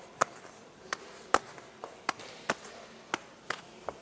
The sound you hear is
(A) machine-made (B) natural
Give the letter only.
B